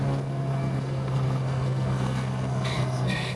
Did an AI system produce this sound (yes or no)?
yes